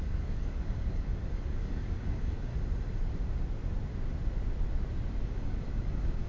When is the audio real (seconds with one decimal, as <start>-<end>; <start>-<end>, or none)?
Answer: 2.5-5.2